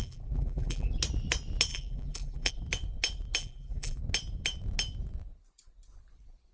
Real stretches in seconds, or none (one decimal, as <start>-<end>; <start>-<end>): 0.9-1.7; 2.5-3.4; 4.0-6.5

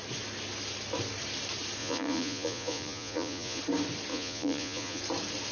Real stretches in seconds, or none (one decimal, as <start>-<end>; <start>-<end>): 0.0-1.8; 3.6-4.1; 5.0-5.5